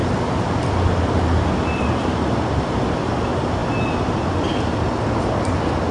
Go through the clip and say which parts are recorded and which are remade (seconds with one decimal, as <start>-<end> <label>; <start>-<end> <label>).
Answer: 0.0-1.8 remade; 1.8-5.9 recorded